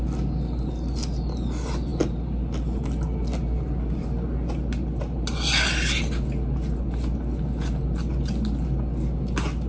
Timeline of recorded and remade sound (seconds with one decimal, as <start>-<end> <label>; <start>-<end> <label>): 0.0-9.7 recorded